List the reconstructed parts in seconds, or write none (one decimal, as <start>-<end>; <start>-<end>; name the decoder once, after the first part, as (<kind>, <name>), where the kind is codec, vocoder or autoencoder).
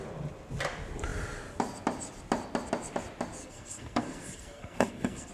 3.4-5.3 (codec, SNAC)